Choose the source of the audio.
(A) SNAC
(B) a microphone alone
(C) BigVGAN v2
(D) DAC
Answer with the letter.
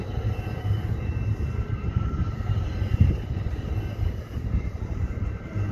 C